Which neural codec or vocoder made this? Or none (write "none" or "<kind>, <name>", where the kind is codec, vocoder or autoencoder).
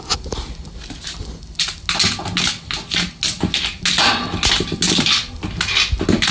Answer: none